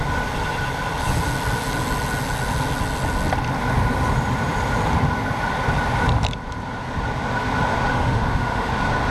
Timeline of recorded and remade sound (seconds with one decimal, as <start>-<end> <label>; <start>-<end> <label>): 0.0-7.9 recorded; 7.9-8.7 remade; 8.7-9.1 recorded